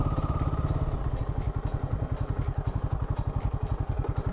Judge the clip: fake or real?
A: real